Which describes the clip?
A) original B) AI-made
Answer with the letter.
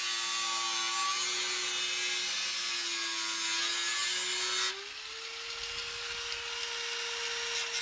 A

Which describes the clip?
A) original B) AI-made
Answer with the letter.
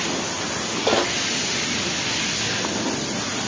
A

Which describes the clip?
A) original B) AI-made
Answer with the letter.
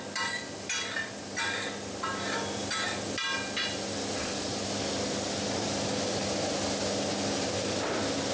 A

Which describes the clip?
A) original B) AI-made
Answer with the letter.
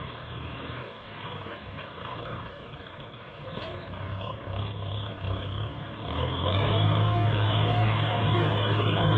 B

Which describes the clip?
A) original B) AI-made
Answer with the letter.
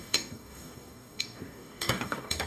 B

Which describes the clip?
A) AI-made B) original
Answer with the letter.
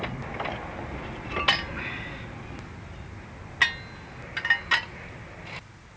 B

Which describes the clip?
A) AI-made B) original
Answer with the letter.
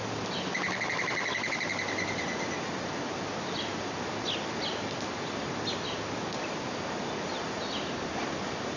B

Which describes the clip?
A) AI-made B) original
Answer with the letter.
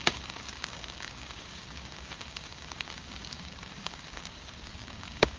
A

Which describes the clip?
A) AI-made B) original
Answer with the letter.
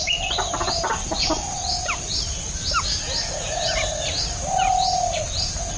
B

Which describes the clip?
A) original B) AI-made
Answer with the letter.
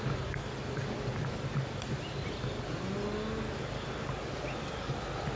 A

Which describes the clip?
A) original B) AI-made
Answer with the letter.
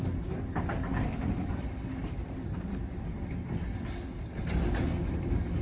A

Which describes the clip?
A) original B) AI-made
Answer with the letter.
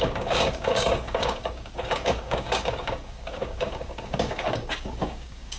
B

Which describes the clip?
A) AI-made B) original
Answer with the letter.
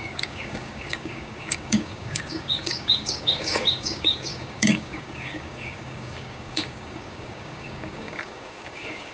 A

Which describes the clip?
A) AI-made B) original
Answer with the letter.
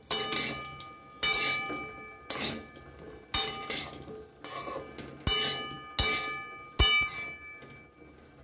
B